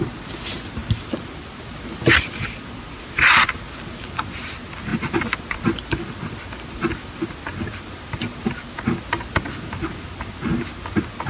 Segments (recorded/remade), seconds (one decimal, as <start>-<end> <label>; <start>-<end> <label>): 0.0-11.3 recorded